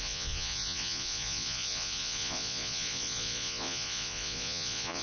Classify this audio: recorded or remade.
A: remade